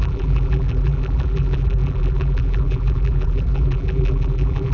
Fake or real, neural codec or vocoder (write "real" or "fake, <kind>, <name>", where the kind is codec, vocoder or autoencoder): fake, vocoder, BigVGAN v2